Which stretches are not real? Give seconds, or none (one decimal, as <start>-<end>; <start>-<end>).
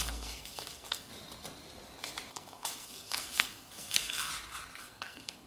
0.0-1.1; 2.3-4.3; 4.8-5.5